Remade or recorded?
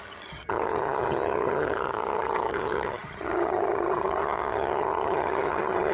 remade